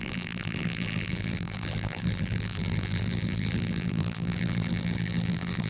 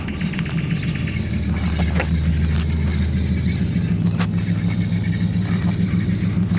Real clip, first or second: second